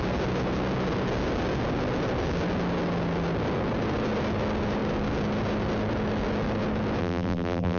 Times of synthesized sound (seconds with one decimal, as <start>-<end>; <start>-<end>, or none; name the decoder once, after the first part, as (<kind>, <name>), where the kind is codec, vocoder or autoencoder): 7.0-7.8 (vocoder, BigVGAN v2)